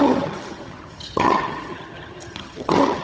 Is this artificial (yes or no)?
yes